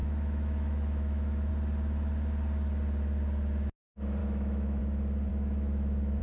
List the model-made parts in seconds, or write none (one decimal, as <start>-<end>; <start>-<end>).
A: 0.0-1.5; 4.2-4.8; 5.3-6.2